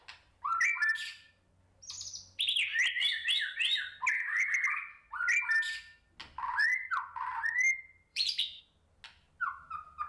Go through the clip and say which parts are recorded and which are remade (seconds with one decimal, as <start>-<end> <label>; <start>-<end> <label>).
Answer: 0.0-8.1 recorded; 8.1-8.6 remade; 8.6-10.1 recorded